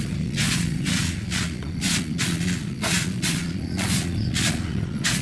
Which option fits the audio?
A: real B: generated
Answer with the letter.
B